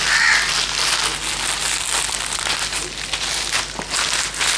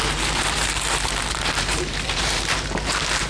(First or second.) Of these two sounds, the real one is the first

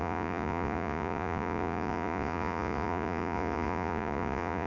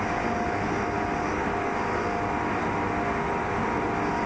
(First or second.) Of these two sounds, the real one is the second